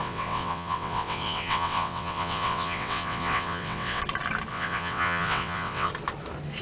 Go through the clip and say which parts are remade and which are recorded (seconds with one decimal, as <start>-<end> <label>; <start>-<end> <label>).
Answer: 0.0-4.0 remade; 4.0-4.5 recorded; 4.5-5.9 remade; 5.9-6.6 recorded